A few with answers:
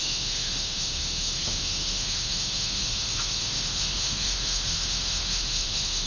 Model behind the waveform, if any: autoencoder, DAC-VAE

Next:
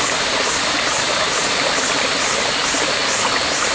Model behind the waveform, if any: none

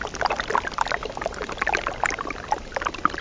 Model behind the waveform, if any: none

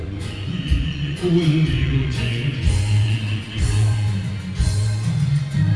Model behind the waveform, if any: vocoder, Vocos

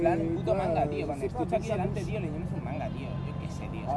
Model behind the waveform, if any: none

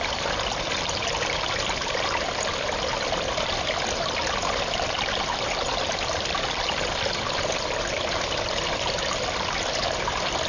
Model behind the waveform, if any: none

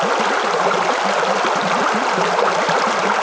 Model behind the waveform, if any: none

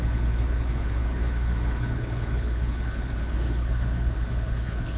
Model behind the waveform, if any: codec, HILCodec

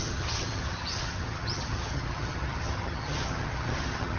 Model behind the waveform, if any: vocoder, HiFi-GAN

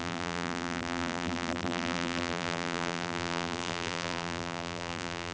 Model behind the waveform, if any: vocoder, BigVGAN v2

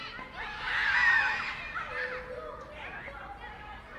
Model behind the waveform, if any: none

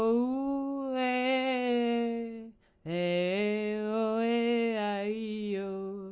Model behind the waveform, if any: none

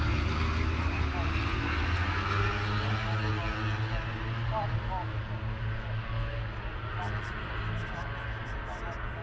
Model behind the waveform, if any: none